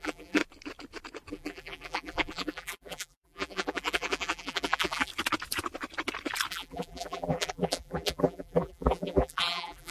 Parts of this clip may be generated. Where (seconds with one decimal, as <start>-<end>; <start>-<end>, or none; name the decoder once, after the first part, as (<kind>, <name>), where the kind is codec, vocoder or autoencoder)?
0.0-0.4 (vocoder, BigVGAN v2); 1.3-5.1; 6.5-9.9